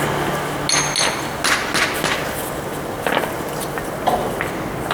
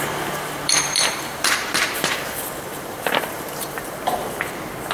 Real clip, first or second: first